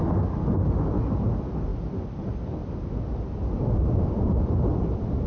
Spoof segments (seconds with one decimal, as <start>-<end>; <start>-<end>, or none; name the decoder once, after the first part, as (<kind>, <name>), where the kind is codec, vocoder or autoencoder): none